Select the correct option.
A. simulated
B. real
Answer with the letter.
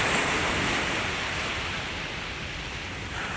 B